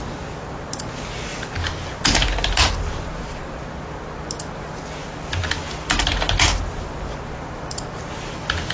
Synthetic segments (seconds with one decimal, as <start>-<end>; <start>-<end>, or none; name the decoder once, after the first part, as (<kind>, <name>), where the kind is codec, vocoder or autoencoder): none